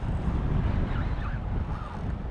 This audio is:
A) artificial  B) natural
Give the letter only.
B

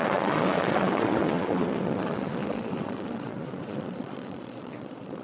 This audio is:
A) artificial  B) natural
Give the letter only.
A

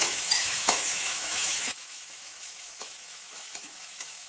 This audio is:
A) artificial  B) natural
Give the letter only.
A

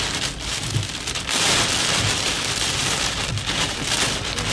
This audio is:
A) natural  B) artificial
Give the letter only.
B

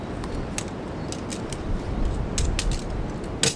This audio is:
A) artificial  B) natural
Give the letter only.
B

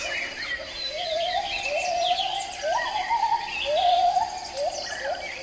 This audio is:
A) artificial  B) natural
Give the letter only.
B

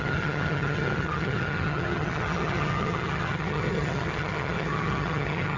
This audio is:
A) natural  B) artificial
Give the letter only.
B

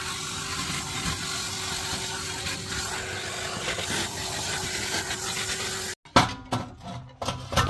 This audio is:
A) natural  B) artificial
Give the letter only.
A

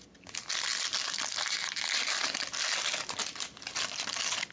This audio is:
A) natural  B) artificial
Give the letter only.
A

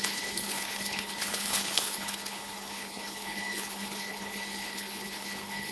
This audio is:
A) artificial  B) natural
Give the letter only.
A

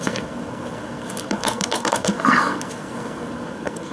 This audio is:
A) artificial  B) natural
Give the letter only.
A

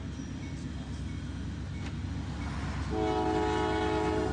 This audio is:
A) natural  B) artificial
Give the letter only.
A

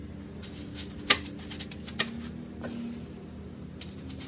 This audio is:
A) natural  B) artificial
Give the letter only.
A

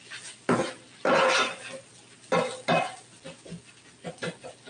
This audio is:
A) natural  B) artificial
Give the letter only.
A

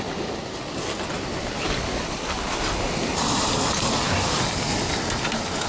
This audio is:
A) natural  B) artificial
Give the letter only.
A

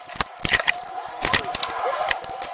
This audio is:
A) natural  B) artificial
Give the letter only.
A